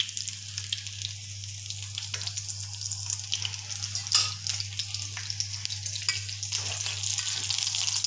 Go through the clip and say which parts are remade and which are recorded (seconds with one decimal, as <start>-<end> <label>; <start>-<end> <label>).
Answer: 0.0-8.1 recorded